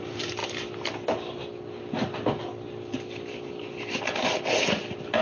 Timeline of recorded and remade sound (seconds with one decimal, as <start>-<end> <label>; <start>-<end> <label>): 0.0-5.2 recorded